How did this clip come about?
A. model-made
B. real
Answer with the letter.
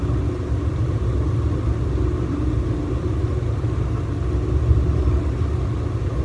B